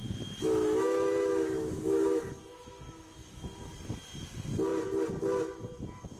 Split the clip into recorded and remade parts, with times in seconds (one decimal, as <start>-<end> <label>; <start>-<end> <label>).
0.0-3.7 remade; 3.7-6.2 recorded